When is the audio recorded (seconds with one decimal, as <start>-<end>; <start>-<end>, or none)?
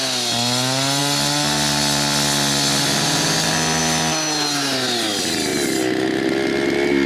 0.0-7.1